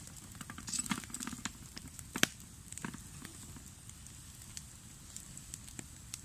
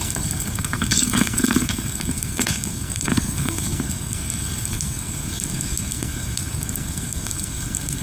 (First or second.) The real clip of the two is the first